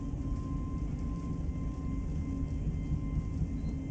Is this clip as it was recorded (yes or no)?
yes